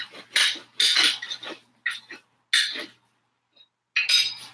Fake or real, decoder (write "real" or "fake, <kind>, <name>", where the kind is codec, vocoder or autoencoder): real